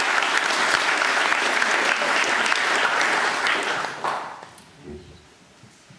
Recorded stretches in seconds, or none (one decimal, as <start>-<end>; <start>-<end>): 0.0-6.0